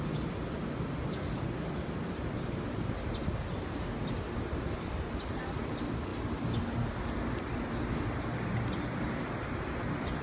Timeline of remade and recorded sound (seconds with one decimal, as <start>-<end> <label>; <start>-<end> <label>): 0.0-10.2 recorded